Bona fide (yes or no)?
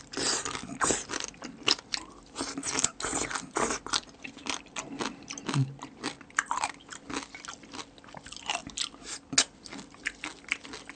yes